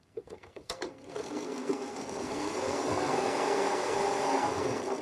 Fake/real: fake